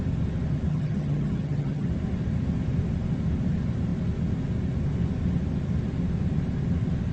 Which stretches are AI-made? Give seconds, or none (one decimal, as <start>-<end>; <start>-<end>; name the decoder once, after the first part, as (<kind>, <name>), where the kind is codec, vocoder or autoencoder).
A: 0.7-1.9 (vocoder, HiFi-GAN)